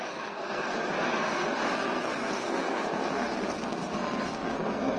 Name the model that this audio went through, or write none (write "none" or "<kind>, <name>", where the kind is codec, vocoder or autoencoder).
codec, SNAC